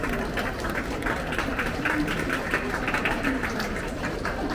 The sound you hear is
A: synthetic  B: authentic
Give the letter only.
B